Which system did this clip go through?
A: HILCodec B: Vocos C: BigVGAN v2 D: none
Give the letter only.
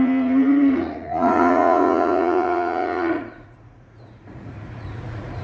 B